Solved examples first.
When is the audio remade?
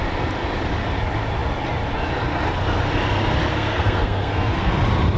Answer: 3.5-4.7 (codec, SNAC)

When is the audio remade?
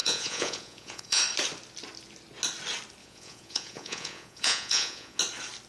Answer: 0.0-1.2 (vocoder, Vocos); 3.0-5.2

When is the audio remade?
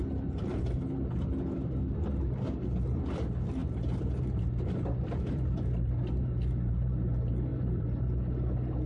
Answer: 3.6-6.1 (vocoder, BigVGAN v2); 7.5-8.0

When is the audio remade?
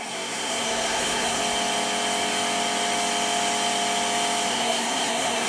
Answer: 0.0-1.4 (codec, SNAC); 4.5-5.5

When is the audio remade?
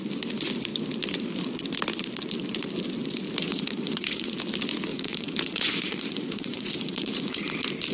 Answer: 3.5-4.3 (vocoder, Vocos); 4.9-7.5